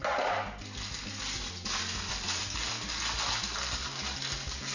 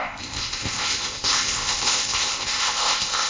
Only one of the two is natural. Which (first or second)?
first